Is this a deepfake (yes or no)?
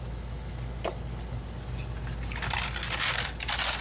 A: no